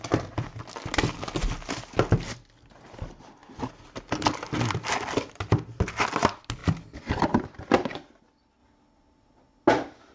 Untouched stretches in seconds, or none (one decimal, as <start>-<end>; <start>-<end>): 0.0-10.1